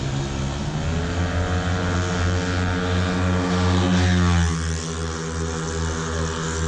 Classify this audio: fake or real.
real